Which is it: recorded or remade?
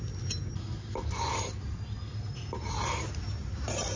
recorded